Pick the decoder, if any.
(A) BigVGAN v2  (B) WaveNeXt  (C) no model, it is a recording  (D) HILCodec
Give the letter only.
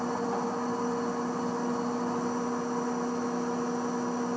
C